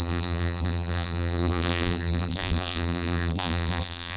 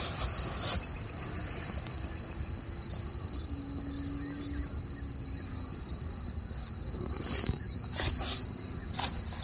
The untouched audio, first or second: second